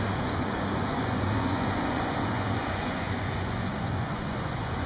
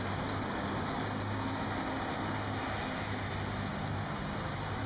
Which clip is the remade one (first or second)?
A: first